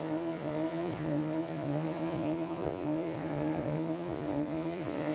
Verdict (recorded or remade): remade